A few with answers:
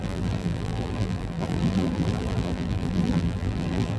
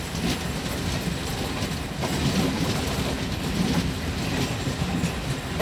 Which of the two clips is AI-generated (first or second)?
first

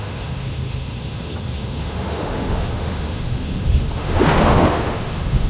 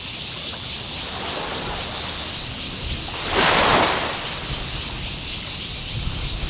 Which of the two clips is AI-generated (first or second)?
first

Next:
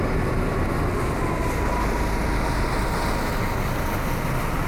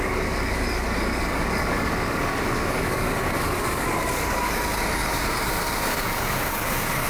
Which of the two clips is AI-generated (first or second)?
second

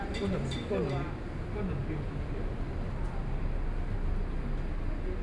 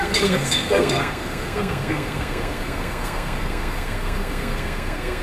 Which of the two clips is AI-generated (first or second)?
second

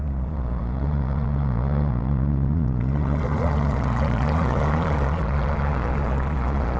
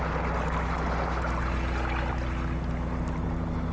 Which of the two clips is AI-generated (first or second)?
first